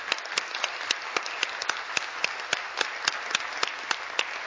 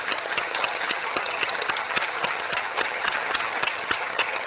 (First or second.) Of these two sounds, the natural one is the first